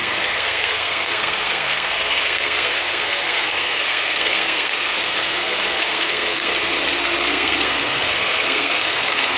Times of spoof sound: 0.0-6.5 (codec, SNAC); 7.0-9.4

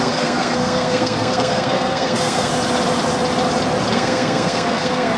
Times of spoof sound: 0.0-2.5 (codec, SNAC); 3.9-5.2

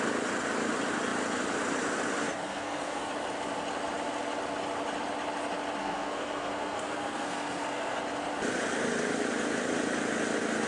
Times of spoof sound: 2.2-3.1 (codec, SNAC); 5.8-8.0